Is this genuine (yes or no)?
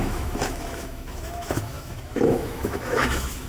no